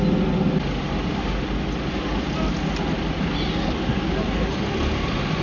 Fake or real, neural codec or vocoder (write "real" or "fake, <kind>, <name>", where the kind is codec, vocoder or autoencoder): real